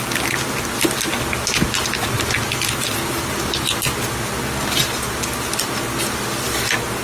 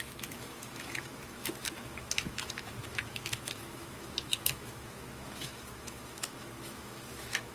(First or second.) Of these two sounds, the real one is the first